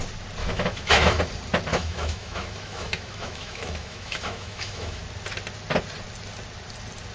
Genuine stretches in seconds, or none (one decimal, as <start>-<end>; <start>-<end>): 0.0-0.4; 1.2-1.7; 5.0-7.1